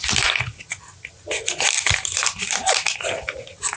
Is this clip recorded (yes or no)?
yes